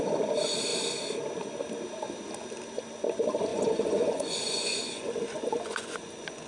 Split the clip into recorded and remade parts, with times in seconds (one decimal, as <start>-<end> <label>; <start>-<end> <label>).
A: 0.0-3.5 recorded; 3.5-6.5 remade